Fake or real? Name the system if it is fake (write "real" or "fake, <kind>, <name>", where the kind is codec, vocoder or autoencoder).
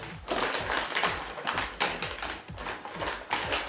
real